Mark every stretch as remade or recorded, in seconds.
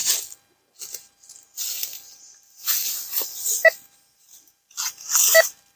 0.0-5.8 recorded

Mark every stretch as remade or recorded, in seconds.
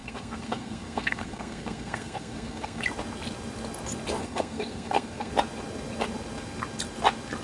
0.0-2.8 remade; 2.8-4.2 recorded; 4.2-5.3 remade; 5.3-7.4 recorded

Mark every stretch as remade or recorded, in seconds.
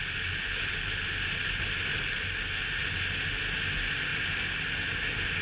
0.0-5.4 recorded